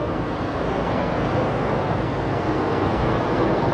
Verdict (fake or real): fake